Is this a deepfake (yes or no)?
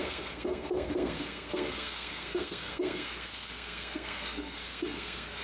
yes